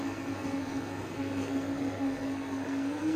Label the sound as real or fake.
fake